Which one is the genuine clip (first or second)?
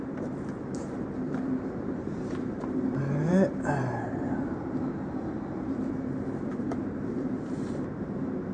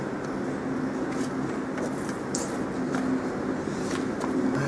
second